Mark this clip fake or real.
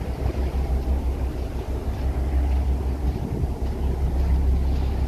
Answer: real